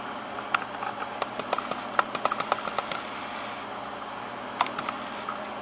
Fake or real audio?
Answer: real